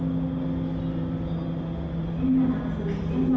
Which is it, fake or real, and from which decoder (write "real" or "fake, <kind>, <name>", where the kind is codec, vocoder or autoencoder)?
real